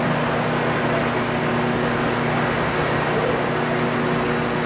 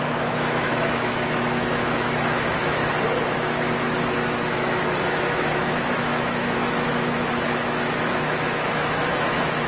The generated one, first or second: second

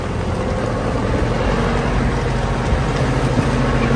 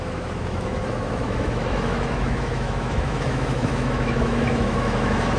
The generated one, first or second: second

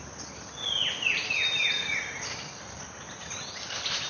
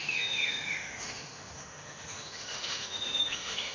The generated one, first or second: second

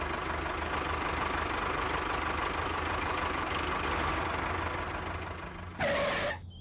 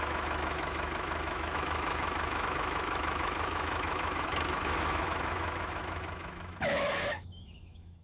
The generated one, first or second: second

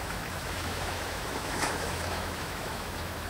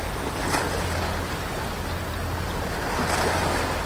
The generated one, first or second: first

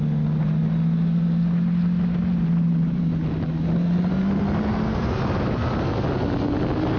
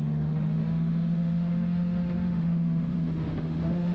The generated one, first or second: second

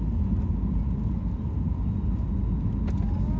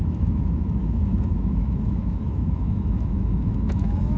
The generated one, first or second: second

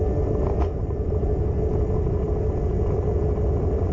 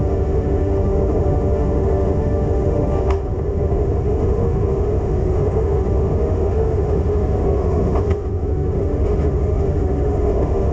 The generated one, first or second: second